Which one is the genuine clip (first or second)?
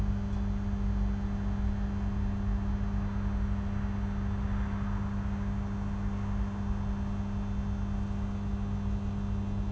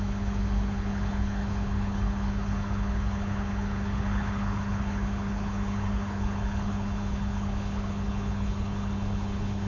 first